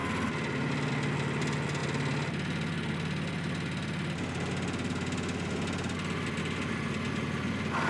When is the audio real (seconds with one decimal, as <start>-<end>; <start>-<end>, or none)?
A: 0.0-7.9